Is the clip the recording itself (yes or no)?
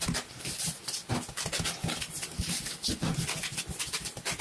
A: yes